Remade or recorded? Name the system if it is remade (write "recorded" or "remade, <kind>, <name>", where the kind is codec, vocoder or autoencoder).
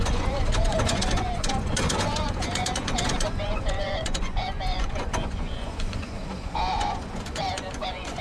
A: remade, vocoder, Vocos